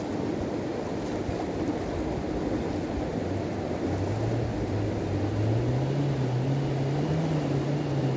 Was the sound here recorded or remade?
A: recorded